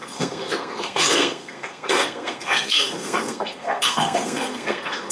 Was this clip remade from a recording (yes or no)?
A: yes